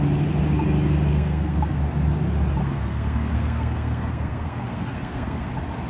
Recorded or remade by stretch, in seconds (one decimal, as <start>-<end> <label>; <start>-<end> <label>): 0.0-1.1 recorded; 1.1-1.8 remade; 1.8-2.6 recorded; 2.6-5.5 remade; 5.5-5.9 recorded